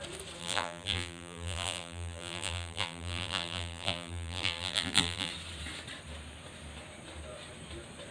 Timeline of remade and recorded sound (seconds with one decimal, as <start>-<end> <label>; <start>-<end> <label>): 0.0-0.4 recorded; 0.4-5.3 remade; 5.3-8.1 recorded